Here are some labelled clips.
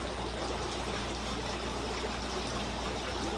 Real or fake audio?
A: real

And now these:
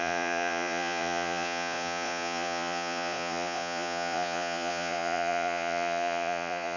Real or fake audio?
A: fake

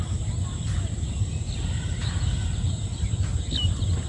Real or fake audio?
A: real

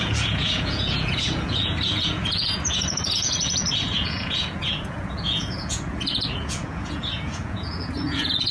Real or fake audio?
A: fake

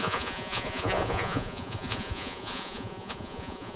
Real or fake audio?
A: fake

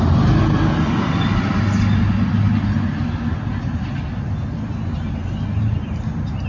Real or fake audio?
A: real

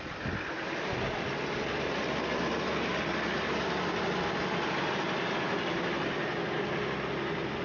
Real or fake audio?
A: real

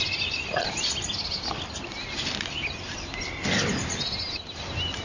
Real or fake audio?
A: real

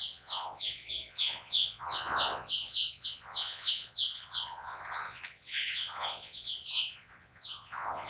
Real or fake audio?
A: fake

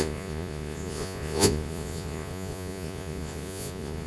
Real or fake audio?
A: fake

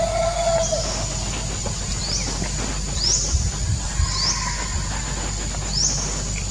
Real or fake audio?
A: real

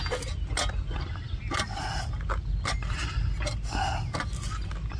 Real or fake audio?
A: real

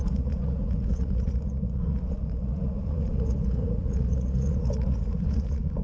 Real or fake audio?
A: fake